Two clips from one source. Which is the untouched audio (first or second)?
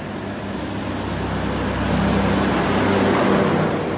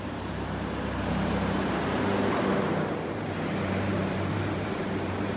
first